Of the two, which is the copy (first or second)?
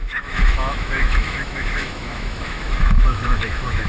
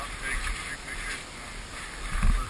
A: first